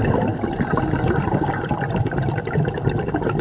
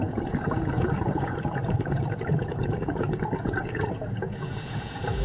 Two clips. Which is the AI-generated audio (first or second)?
second